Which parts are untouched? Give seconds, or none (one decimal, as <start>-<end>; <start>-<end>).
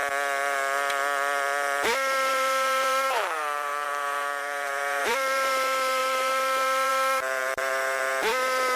0.0-2.3